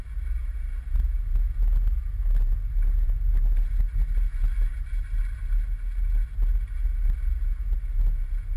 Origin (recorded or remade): recorded